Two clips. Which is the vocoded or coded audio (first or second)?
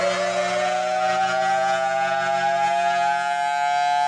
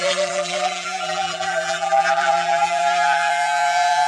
second